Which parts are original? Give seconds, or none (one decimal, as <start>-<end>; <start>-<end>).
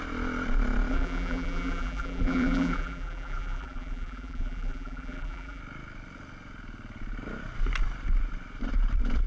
0.0-0.9; 5.6-9.3